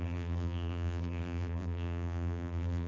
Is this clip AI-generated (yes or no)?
yes